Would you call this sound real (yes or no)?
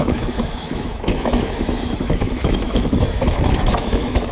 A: no